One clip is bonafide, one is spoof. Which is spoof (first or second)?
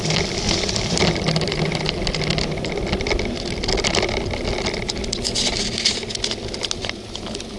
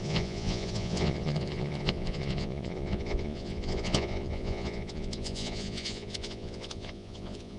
second